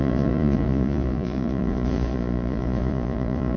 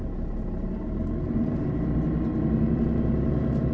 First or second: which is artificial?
first